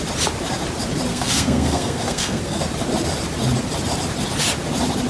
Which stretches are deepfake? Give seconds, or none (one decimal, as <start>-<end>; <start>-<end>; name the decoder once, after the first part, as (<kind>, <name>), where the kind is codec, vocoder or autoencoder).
1.1-2.6 (codec, SNAC)